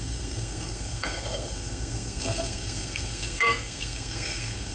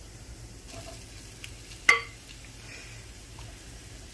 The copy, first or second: first